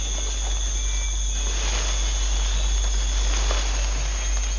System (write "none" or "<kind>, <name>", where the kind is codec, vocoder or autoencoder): none